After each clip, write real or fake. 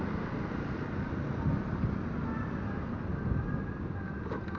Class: real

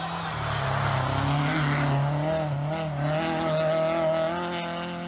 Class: real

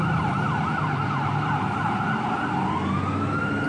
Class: real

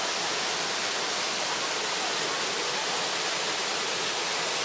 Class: real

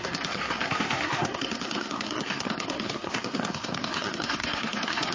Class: fake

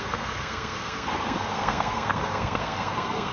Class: fake